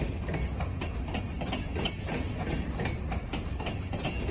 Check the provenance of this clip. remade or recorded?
recorded